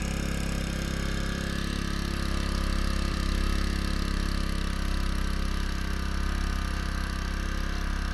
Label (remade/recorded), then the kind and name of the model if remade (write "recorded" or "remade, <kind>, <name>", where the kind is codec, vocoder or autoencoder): recorded